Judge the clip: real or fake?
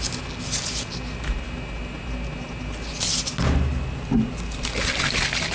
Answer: real